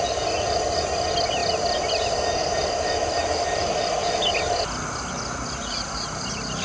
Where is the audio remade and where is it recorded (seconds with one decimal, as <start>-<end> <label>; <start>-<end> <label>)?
0.0-6.6 recorded